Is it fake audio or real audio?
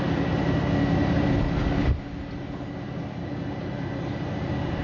real